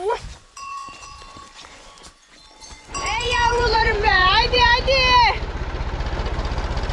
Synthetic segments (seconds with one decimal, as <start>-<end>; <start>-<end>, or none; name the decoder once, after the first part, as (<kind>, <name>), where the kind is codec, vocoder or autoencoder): 0.0-4.7 (vocoder, Vocos)